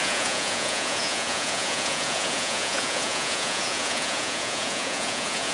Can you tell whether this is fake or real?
fake